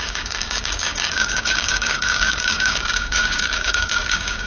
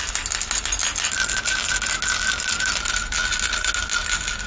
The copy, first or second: first